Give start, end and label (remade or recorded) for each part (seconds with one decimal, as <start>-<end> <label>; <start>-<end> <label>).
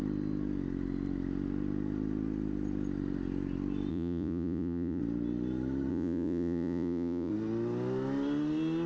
0.0-3.9 recorded; 3.9-5.0 remade; 5.0-5.9 recorded; 5.9-7.3 remade; 7.3-8.9 recorded